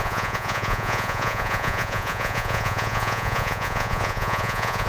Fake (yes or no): yes